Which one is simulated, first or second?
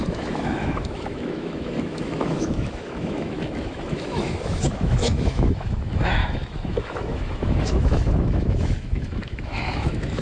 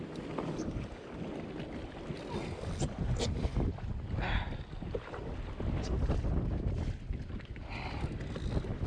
first